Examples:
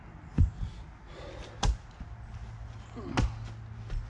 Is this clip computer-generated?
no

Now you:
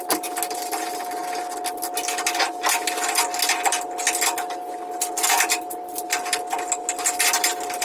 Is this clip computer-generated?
no